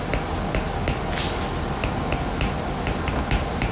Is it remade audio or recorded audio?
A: recorded